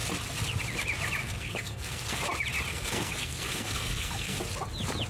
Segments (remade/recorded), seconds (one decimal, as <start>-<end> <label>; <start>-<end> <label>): 0.0-1.2 recorded; 1.2-2.2 remade; 2.2-2.7 recorded; 2.7-4.4 remade; 4.4-5.1 recorded